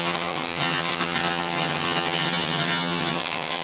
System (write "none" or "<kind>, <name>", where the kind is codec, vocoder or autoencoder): vocoder, HiFi-GAN